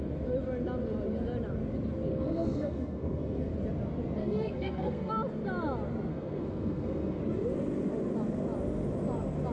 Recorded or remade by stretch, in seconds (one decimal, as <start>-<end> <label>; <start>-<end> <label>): 0.0-2.1 recorded; 2.1-3.5 remade; 3.5-4.2 recorded; 4.2-5.1 remade; 5.1-6.1 recorded; 6.1-7.2 remade; 7.2-9.5 recorded